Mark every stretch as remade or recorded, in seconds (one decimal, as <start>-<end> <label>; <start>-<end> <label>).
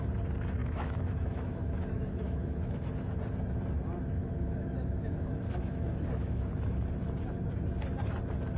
0.0-0.6 recorded; 0.6-2.9 remade; 2.9-4.2 recorded; 4.2-6.5 remade; 6.5-8.6 recorded